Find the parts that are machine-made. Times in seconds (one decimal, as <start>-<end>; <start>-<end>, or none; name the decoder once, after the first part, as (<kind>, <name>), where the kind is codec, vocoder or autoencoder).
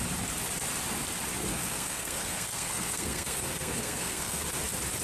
1.5-4.5 (codec, SNAC)